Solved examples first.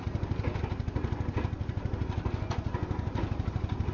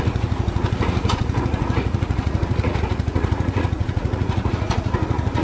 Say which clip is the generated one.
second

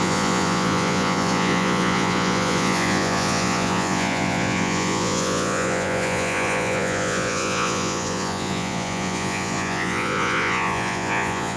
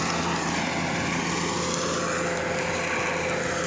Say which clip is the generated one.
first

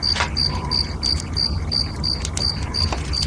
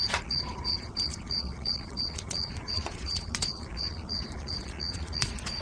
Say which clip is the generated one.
second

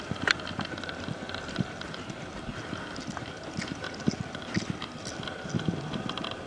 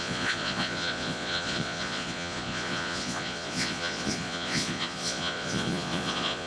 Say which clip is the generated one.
second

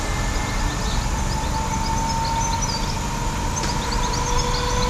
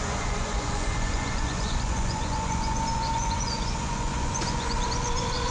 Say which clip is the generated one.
second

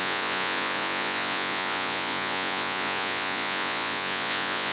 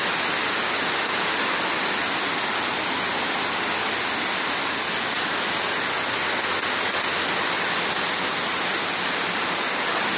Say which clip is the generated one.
first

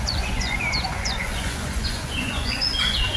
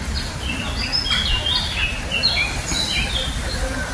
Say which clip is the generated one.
first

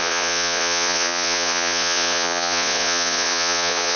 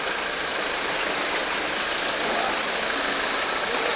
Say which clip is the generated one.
first